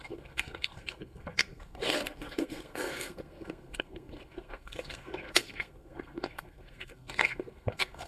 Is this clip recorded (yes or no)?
no